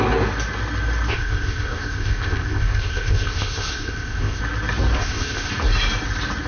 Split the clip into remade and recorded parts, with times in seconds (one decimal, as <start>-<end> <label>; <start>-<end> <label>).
0.0-1.1 recorded; 1.1-4.4 remade; 4.4-5.0 recorded; 5.0-5.5 remade; 5.5-6.5 recorded